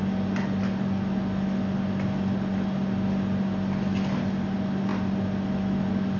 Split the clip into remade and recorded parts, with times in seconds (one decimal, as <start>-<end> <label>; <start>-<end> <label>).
0.0-6.2 recorded